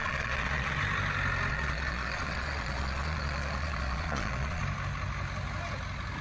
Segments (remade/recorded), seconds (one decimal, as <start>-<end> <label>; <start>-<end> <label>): 0.0-0.8 remade; 0.8-1.5 recorded; 1.5-4.6 remade; 4.6-6.2 recorded